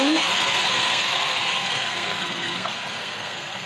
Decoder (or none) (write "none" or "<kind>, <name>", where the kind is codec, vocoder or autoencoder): codec, SNAC